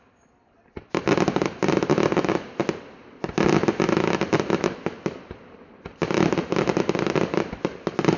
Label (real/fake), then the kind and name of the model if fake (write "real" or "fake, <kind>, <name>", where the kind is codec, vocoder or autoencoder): real